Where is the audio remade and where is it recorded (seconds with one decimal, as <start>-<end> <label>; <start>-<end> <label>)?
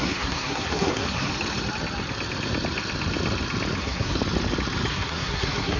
0.0-1.3 remade; 1.3-3.8 recorded; 3.8-4.2 remade; 4.2-4.9 recorded; 4.9-5.8 remade